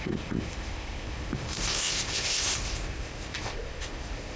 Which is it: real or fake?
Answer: fake